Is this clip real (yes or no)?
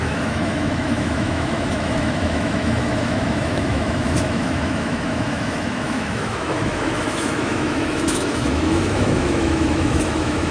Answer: no